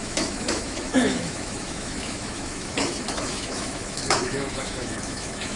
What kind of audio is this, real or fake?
fake